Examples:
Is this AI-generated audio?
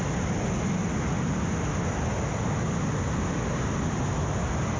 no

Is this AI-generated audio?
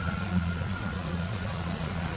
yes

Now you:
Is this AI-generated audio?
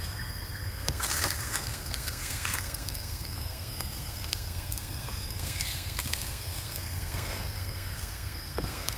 yes